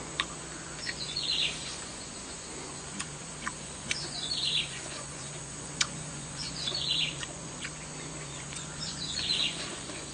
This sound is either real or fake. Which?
fake